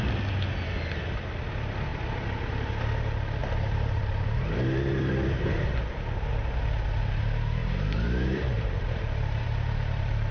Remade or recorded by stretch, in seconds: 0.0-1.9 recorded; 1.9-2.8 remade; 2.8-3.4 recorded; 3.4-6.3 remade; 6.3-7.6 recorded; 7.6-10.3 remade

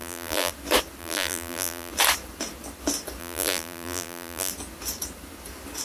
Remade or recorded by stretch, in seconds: 0.0-0.5 remade; 0.5-1.0 recorded; 1.0-1.9 remade; 1.9-3.2 recorded; 3.2-4.5 remade; 4.5-5.8 recorded

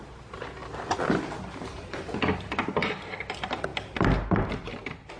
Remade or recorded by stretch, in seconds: 0.0-1.7 recorded; 1.7-2.2 remade; 2.2-2.8 recorded; 2.8-3.3 remade; 3.3-5.2 recorded

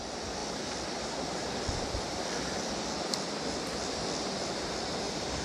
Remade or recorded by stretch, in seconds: 0.0-0.4 recorded; 0.4-2.7 remade; 2.7-5.4 recorded

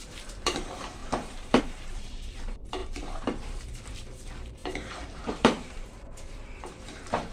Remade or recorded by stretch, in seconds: 0.0-7.3 remade

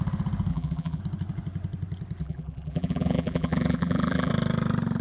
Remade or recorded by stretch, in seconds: 0.0-0.5 recorded; 0.5-1.0 remade; 1.0-2.2 recorded; 2.2-4.3 remade; 4.3-5.0 recorded